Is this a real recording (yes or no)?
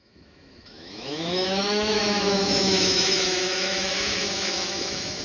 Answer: no